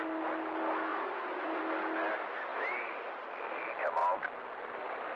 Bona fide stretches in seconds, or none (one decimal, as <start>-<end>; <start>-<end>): 0.0-0.9; 1.6-2.5; 3.3-5.2